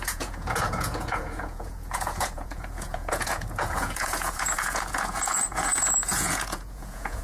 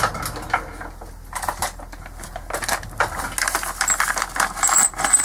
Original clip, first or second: second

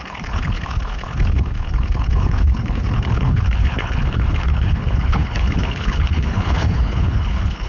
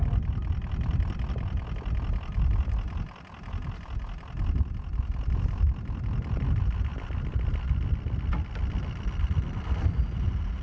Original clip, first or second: second